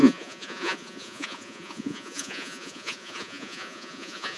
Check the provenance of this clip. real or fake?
fake